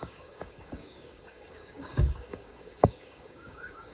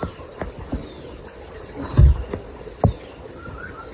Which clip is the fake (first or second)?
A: first